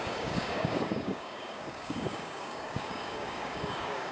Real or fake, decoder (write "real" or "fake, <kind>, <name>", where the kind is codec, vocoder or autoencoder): fake, codec, DAC